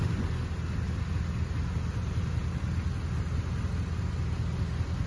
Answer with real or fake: real